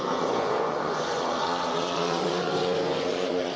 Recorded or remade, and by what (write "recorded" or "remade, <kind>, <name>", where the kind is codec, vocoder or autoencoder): remade, vocoder, Vocos